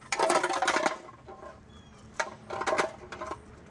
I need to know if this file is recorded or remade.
remade